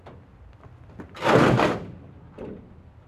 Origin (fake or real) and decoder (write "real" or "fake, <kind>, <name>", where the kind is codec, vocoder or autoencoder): real